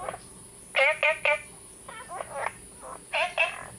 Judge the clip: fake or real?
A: real